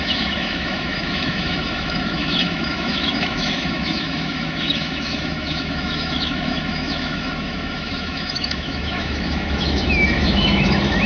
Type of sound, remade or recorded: remade